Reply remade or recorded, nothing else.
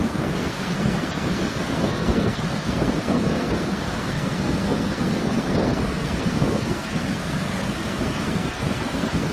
remade